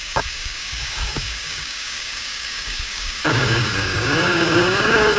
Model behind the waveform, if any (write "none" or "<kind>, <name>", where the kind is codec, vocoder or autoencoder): codec, DAC